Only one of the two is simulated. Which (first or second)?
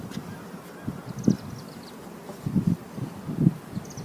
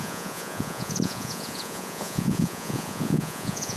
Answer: second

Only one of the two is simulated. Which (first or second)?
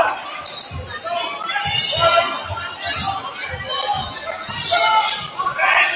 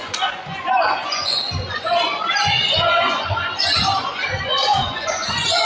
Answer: second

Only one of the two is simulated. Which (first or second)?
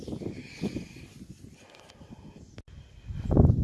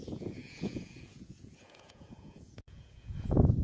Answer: second